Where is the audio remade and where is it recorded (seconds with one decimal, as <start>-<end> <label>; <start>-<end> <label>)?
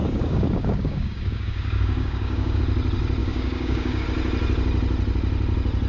0.0-2.6 remade; 2.6-3.2 recorded; 3.2-4.0 remade; 4.0-5.9 recorded